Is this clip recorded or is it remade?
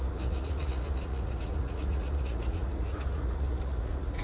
remade